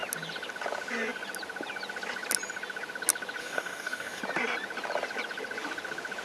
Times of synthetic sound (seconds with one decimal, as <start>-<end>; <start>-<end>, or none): 3.4-4.2